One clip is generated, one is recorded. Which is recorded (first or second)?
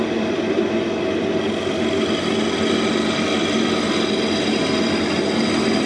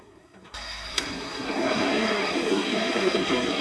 first